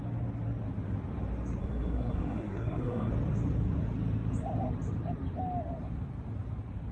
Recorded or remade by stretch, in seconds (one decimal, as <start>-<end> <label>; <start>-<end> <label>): 0.0-1.6 recorded; 1.6-3.1 remade; 3.1-6.9 recorded